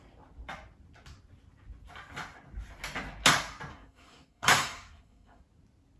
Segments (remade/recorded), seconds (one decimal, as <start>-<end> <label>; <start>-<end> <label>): 0.0-3.7 recorded; 3.7-5.4 remade; 5.4-6.0 recorded